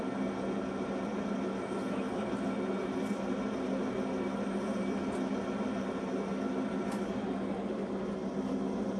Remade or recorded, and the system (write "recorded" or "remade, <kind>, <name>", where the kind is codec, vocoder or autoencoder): recorded